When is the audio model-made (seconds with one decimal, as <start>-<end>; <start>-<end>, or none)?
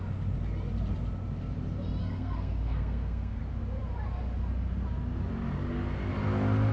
2.0-3.4